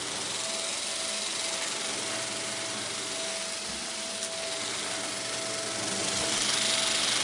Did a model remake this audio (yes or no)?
no